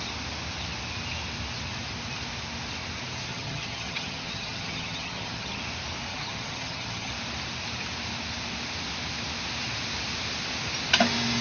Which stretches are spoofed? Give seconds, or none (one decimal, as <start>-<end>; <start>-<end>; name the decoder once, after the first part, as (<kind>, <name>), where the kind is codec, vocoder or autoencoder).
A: 3.3-5.6 (vocoder, HiFi-GAN); 6.1-7.1